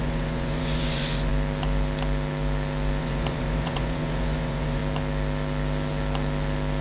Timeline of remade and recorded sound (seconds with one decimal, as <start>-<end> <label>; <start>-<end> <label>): 0.0-1.3 remade; 1.3-3.0 recorded; 3.0-4.8 remade; 4.8-6.8 recorded